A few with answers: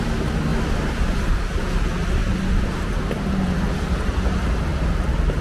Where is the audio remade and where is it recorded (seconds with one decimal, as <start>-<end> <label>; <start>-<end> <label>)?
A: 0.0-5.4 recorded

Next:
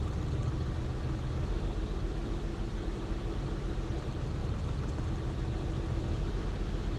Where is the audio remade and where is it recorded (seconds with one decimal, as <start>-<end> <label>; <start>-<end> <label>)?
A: 0.0-7.0 recorded

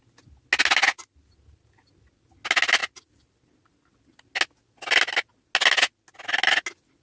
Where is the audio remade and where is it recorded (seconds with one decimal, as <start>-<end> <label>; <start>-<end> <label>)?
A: 0.0-7.0 recorded

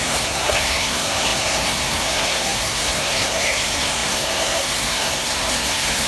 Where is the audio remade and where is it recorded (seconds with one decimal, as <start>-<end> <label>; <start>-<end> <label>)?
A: 0.0-6.1 remade

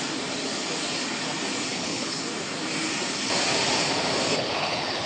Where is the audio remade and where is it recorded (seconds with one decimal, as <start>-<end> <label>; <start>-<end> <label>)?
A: 0.0-1.7 recorded; 1.7-2.2 remade; 2.2-4.3 recorded; 4.3-5.1 remade

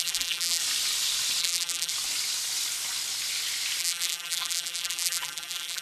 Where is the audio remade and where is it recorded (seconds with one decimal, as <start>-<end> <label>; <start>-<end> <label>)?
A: 0.0-0.6 remade; 0.6-1.4 recorded; 1.4-1.9 remade; 1.9-3.8 recorded; 3.8-5.8 remade

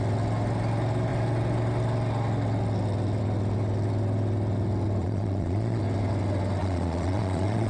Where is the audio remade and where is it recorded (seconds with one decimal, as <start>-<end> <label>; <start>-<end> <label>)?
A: 0.0-5.0 recorded; 5.0-5.8 remade; 5.8-6.6 recorded; 6.6-7.7 remade

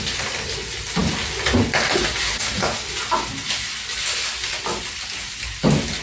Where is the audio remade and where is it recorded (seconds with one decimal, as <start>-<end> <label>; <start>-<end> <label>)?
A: 0.0-6.0 recorded